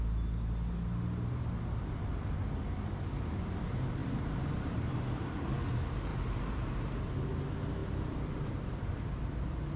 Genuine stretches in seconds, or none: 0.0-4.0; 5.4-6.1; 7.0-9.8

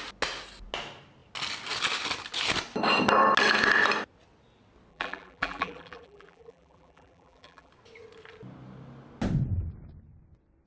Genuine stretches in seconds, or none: 0.0-4.9; 7.7-10.7

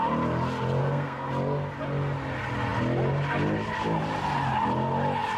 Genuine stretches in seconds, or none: 0.0-0.8; 1.3-5.4

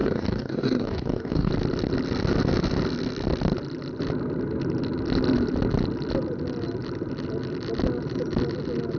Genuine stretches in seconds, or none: 1.5-9.0

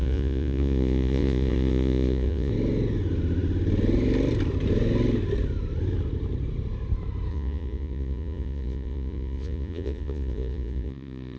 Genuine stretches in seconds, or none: 2.5-7.3

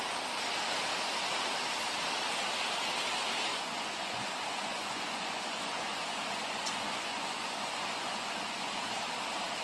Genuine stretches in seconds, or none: 0.0-3.5; 8.7-9.6